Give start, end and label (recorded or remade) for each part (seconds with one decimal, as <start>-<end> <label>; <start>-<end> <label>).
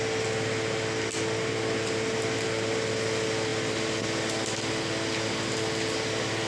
0.0-6.5 recorded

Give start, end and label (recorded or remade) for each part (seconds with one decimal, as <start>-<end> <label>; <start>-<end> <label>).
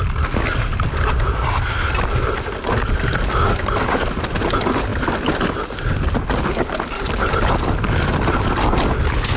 0.0-9.4 recorded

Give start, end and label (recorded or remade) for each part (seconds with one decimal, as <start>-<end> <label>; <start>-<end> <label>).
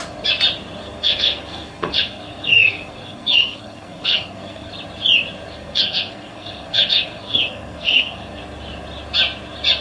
0.0-0.8 recorded; 0.8-4.7 remade; 4.7-5.5 recorded; 5.5-8.4 remade; 8.4-9.8 recorded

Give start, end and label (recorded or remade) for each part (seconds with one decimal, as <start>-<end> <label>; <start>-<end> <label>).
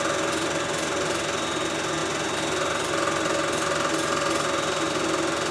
0.0-5.5 recorded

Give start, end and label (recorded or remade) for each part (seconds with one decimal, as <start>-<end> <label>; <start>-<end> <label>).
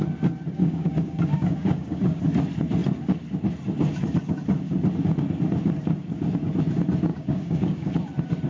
0.0-0.6 recorded; 0.6-2.2 remade; 2.2-7.1 recorded; 7.1-7.9 remade; 7.9-8.5 recorded